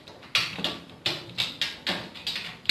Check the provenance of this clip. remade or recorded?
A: recorded